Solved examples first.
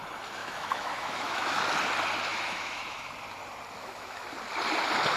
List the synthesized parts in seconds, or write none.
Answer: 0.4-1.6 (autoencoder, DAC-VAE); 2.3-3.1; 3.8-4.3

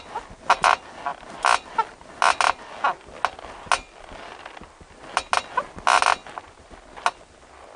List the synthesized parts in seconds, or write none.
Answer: none